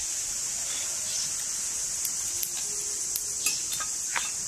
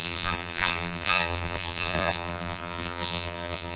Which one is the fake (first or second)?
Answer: second